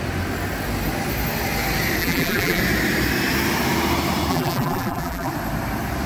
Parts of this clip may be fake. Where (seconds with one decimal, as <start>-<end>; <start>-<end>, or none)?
2.0-2.6; 4.3-5.3